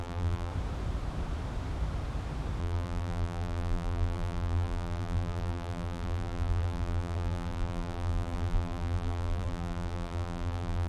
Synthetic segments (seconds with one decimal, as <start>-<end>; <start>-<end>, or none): 0.0-0.5; 2.6-10.9